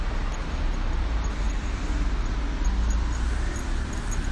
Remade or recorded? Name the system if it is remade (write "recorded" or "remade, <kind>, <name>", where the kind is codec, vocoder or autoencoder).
recorded